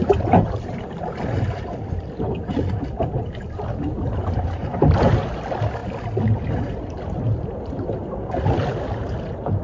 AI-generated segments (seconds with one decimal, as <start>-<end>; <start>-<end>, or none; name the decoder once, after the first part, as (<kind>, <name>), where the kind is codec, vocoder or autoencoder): 0.0-4.6 (vocoder, BigVGAN v2)